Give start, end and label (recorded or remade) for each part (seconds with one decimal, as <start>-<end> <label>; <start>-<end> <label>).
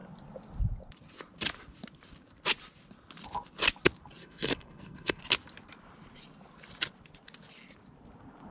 0.0-4.2 recorded; 4.2-5.2 remade; 5.2-8.5 recorded